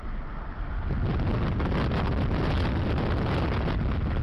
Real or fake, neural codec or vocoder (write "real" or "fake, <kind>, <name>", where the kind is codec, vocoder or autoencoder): real